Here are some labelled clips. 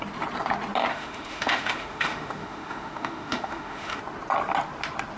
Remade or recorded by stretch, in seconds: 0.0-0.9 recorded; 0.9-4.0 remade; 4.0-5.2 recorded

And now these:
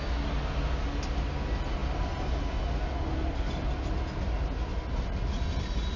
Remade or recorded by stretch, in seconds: 0.0-6.0 recorded

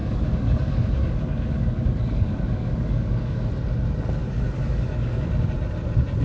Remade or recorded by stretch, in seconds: 0.0-3.5 remade; 3.5-4.2 recorded; 4.2-5.3 remade; 5.3-6.2 recorded

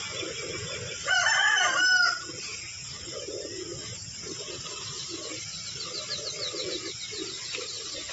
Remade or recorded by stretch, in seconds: 0.0-8.1 recorded